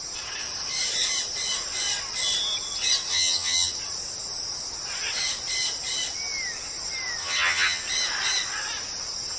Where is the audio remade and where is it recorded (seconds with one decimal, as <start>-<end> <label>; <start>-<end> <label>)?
0.0-3.1 recorded; 3.1-3.7 remade; 3.7-7.2 recorded; 7.2-7.8 remade; 7.8-9.4 recorded

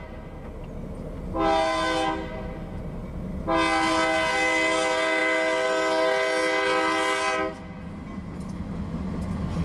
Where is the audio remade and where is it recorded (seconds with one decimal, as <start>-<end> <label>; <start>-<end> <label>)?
0.0-9.6 recorded

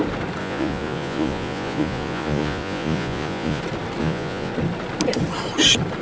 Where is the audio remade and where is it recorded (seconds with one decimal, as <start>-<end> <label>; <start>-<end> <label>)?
0.0-0.4 recorded; 0.4-3.6 remade; 3.6-4.0 recorded; 4.0-4.5 remade; 4.5-6.0 recorded

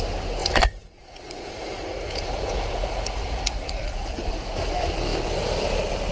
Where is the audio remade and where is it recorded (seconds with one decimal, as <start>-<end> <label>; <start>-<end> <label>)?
0.0-0.4 recorded; 0.4-4.1 remade; 4.1-6.1 recorded